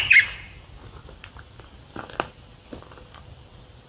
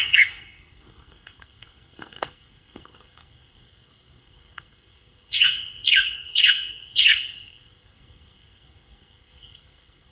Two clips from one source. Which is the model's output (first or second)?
second